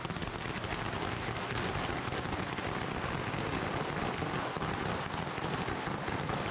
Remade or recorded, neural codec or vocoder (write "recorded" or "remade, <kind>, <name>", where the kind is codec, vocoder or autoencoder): recorded